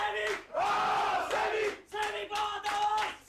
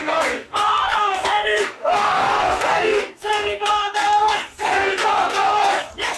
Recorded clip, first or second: first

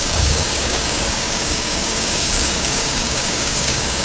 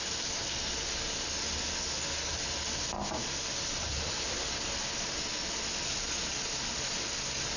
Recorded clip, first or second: second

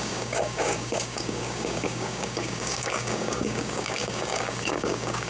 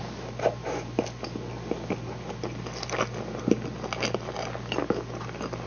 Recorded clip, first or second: second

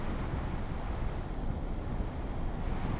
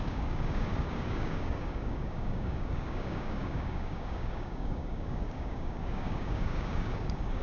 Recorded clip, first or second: first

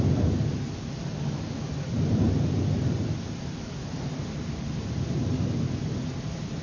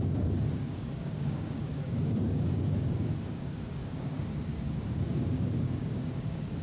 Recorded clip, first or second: first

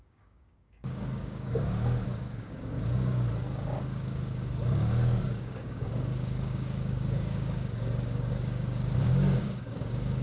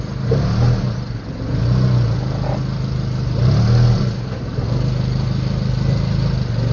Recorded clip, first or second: second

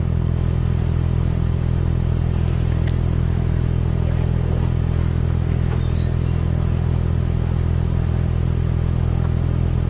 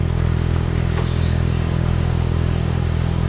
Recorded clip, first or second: first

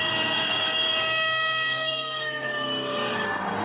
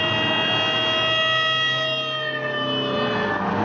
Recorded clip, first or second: second